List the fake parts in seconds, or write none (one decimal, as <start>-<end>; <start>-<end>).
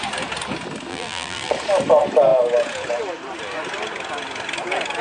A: 0.9-1.5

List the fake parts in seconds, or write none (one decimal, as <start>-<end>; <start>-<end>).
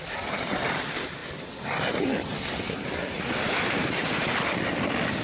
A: 0.0-1.2; 3.2-5.2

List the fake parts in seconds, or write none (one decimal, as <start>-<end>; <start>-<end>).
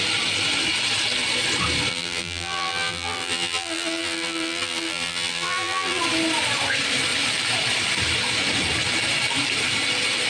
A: 1.9-6.0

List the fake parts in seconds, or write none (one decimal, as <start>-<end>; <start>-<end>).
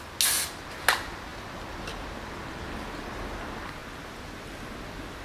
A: none